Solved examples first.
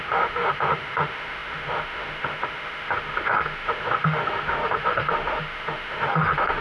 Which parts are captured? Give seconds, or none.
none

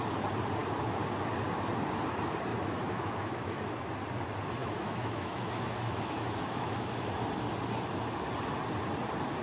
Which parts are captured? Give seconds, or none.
0.0-2.5; 3.9-4.6; 7.1-9.4

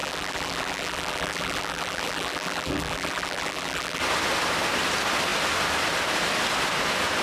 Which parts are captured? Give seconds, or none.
4.0-7.2

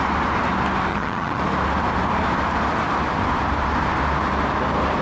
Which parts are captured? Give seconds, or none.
0.0-0.9; 1.4-5.0

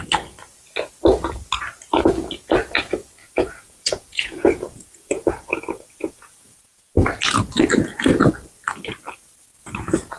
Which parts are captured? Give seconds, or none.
0.0-3.2; 6.9-10.2

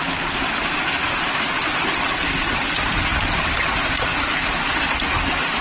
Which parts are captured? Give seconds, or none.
0.0-3.1; 4.0-5.6

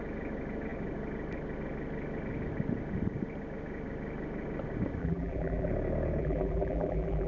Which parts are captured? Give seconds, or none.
0.0-5.0; 5.7-6.2

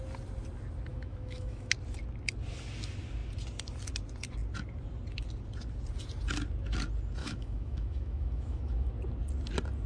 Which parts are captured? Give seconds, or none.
0.0-0.9; 1.7-7.2; 8.9-9.9